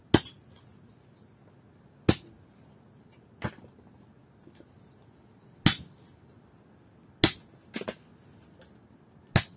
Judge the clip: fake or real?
real